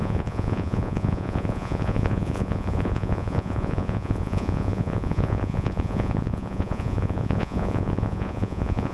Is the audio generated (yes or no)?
yes